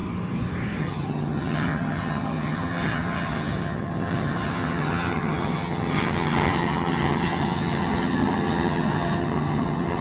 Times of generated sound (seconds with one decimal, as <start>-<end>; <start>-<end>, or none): 0.8-10.0